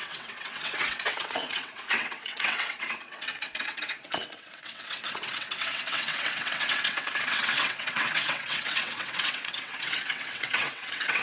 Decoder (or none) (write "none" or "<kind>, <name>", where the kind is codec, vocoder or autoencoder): vocoder, WaveNeXt